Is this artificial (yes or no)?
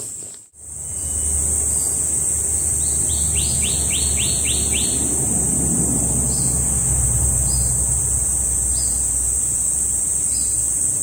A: no